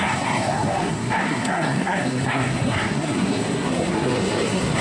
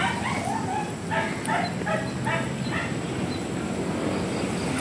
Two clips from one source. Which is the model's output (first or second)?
first